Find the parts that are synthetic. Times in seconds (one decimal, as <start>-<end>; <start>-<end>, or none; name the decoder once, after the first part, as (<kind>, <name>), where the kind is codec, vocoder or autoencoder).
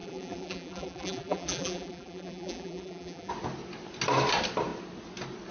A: 0.0-3.3 (vocoder, BigVGAN v2)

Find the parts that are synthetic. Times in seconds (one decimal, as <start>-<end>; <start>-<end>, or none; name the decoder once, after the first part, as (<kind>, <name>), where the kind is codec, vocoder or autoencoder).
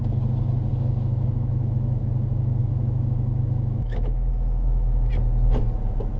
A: 0.7-2.0 (autoencoder, DAC-VAE); 2.6-5.1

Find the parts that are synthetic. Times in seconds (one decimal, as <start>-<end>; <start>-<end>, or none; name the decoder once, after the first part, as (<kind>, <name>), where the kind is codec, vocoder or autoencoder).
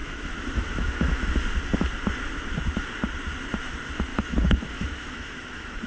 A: 0.0-1.2 (autoencoder, DAC-VAE); 4.1-5.9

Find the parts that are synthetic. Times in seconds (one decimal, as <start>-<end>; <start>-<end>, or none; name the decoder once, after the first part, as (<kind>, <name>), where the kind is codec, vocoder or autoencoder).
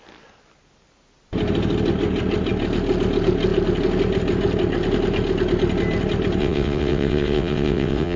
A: 6.4-8.2 (vocoder, WaveNeXt)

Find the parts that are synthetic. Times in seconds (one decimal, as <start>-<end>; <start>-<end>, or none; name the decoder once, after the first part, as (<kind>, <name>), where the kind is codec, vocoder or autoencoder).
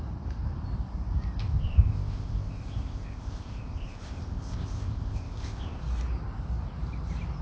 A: 1.4-5.8 (codec, ZipCodec)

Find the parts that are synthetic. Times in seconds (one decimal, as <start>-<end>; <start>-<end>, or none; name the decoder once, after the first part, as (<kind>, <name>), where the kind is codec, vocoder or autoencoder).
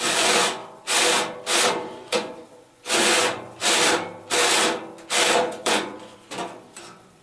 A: 0.0-0.6 (vocoder, Vocos); 1.7-3.6; 5.4-7.2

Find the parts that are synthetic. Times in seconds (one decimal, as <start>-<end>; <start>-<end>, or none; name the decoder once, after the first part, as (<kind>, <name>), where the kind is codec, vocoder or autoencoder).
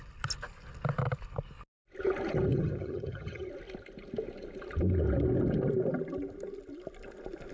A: 2.5-3.5 (vocoder, HiFi-GAN)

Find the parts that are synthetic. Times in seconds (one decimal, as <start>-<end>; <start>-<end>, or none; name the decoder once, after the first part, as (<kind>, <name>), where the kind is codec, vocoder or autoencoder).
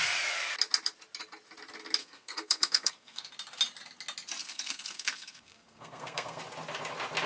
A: 2.0-3.3 (codec, SNAC); 4.4-6.4